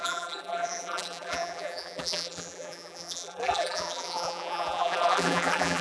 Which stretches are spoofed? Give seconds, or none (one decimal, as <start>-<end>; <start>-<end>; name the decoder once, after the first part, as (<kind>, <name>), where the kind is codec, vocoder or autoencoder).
0.0-5.8 (vocoder, BigVGAN v2)